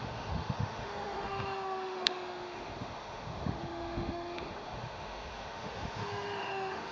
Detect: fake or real fake